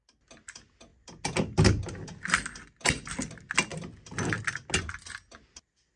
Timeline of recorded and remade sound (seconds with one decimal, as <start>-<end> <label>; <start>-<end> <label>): 0.0-6.0 recorded